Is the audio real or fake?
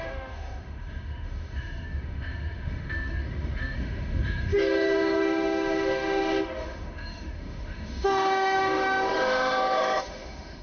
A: fake